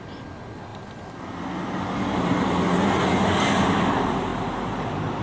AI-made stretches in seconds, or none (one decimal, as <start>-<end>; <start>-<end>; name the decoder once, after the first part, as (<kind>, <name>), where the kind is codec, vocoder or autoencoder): none